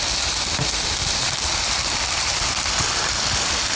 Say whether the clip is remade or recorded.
remade